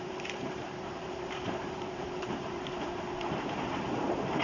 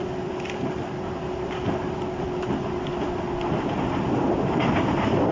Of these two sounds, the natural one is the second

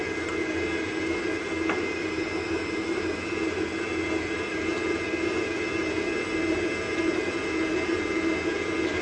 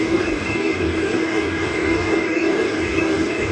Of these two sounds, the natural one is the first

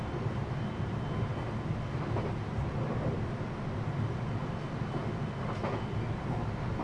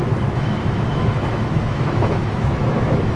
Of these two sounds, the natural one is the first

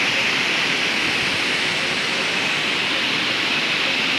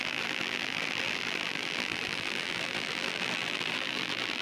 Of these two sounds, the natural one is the first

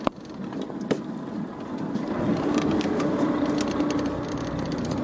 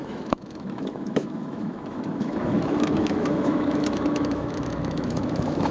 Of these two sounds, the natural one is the first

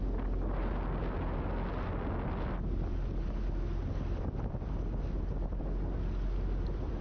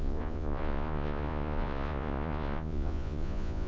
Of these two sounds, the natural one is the first